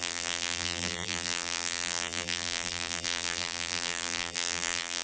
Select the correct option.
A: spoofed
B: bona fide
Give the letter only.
A